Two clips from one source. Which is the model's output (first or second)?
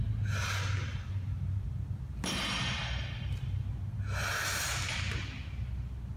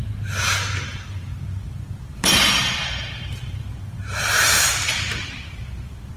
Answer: second